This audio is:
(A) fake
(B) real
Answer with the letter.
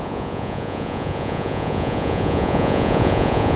A